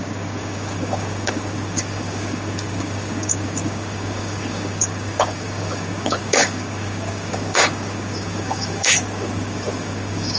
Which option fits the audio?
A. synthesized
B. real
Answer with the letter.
A